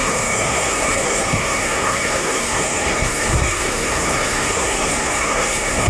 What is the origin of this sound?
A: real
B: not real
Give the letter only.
B